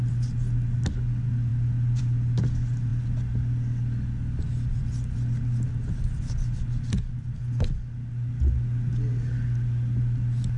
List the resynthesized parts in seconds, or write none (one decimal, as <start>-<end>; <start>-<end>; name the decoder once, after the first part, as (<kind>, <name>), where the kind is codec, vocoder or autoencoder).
none